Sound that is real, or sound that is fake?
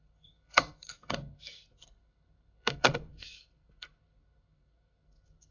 fake